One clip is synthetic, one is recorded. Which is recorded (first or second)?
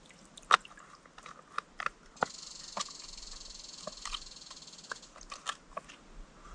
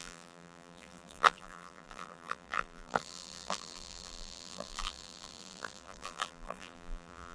first